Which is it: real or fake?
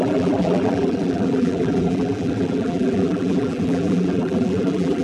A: fake